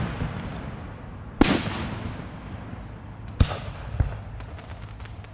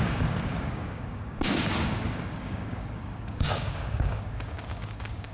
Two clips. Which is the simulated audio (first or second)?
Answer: second